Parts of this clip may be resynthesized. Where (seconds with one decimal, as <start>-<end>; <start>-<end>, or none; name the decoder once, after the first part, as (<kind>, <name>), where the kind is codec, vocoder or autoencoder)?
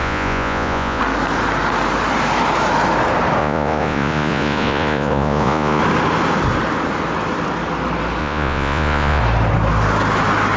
0.0-1.0 (vocoder, Vocos); 3.4-5.8; 8.2-9.2